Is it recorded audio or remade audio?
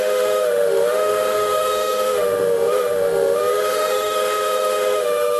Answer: remade